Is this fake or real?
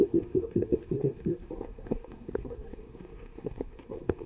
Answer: fake